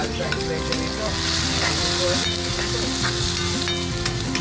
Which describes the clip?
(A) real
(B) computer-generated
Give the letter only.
A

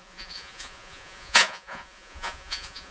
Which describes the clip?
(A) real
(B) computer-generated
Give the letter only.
B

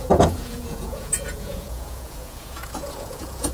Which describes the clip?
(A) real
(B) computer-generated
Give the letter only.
B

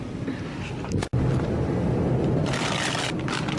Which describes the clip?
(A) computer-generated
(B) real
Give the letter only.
B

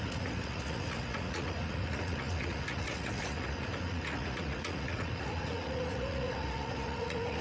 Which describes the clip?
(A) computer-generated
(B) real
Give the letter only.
A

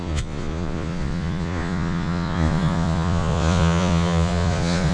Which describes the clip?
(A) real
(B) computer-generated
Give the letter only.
B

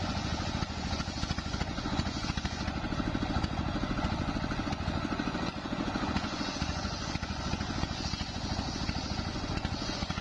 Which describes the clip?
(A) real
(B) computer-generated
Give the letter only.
B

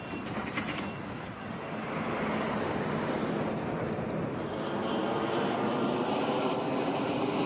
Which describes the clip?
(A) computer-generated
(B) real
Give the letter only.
B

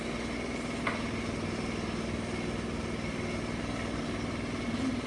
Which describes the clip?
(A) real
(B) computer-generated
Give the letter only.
A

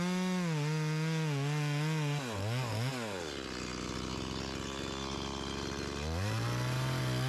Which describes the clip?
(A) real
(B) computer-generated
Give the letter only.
A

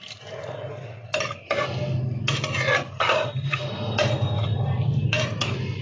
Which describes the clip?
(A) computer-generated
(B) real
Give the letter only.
B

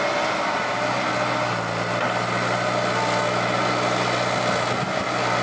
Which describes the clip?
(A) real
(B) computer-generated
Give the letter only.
A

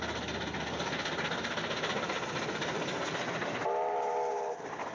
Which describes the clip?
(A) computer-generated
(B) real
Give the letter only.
B